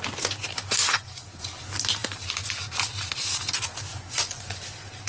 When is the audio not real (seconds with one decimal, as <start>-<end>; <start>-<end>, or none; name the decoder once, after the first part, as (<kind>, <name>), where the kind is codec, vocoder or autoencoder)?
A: 0.8-1.4 (vocoder, Vocos); 3.9-4.6